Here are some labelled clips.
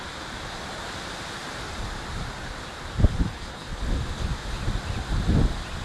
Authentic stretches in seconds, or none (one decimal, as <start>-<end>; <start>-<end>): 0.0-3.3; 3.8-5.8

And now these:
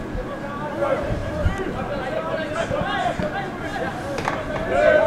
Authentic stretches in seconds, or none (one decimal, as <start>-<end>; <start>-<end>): 0.0-1.2; 1.7-5.1

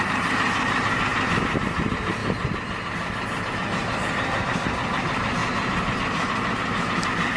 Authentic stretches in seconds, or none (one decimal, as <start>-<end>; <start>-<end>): 2.2-3.5; 5.4-6.0

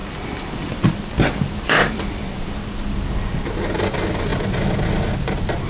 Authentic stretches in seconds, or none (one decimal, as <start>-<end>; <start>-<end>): 3.4-5.7

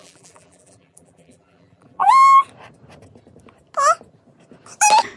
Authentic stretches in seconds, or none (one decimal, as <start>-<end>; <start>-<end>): 2.1-5.2

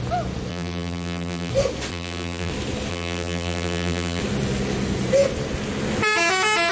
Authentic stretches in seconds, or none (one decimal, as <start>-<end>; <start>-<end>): 0.0-0.5; 1.5-1.9; 2.5-2.9; 4.2-6.7

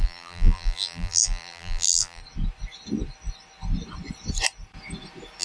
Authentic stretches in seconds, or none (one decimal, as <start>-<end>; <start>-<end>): 2.2-5.4